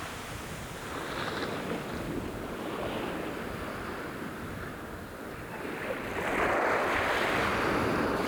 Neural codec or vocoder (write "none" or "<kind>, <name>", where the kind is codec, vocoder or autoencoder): none